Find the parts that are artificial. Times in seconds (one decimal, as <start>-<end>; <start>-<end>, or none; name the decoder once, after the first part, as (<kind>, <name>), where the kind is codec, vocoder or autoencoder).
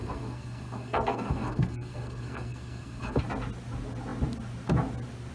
0.0-3.2 (codec, SNAC)